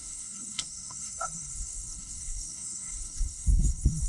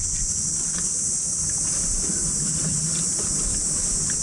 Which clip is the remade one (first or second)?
first